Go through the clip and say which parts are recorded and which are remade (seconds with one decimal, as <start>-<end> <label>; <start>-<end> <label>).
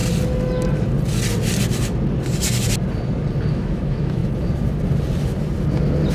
0.0-3.5 recorded; 3.5-4.2 remade; 4.2-6.1 recorded